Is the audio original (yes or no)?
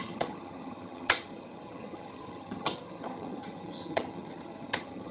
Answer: no